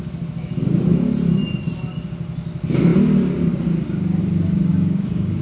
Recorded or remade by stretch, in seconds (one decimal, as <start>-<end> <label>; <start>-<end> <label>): 0.0-4.7 recorded; 4.7-5.4 remade